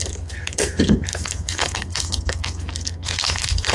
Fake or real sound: fake